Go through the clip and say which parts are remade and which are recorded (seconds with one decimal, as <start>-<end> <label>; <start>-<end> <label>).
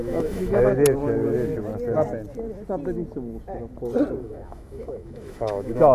0.0-0.7 remade; 0.7-4.2 recorded; 4.2-5.9 remade